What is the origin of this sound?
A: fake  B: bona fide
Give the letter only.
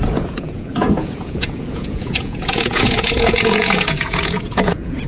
A